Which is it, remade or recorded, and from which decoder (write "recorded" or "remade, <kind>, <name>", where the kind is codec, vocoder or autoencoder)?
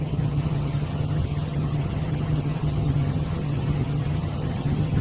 remade, vocoder, HiFi-GAN